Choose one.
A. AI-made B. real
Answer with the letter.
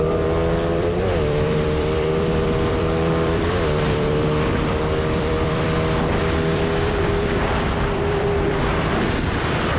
A